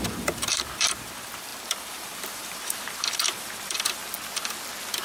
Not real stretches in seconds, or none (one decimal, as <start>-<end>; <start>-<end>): 0.0-4.0